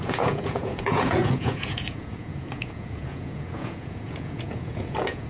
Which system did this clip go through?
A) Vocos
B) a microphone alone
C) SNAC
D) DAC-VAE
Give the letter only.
A